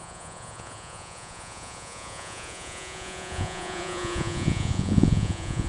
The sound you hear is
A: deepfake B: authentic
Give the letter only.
A